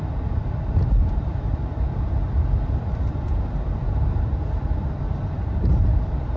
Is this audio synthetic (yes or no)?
yes